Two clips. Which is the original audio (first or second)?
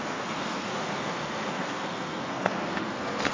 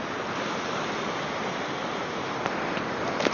second